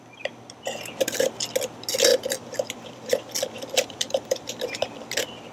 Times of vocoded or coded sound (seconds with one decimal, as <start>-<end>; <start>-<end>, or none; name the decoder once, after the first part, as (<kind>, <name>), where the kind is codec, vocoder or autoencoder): 2.1-4.5 (vocoder, BigVGAN v2)